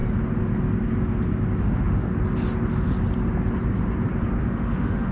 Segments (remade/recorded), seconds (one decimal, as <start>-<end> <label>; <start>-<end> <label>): 0.0-1.6 recorded; 1.6-2.1 remade; 2.1-4.4 recorded; 4.4-5.1 remade